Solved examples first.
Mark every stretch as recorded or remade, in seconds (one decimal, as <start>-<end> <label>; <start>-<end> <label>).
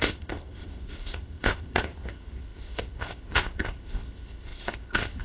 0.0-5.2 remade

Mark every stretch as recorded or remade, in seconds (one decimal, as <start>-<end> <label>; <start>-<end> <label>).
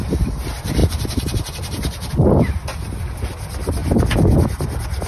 0.0-0.8 recorded; 0.8-2.1 remade; 2.1-5.1 recorded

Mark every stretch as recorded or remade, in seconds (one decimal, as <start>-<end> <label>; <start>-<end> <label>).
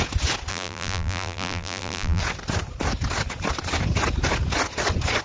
0.0-0.5 recorded; 0.5-2.2 remade; 2.2-5.2 recorded